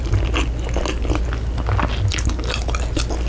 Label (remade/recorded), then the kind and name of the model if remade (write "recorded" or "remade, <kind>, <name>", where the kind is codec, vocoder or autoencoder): recorded